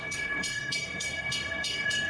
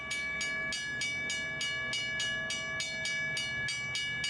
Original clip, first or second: second